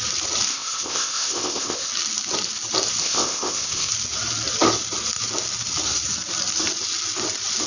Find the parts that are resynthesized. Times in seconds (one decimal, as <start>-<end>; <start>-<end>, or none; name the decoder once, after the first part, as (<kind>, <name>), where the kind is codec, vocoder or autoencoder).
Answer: 0.5-1.9 (codec, ZipCodec); 3.0-3.9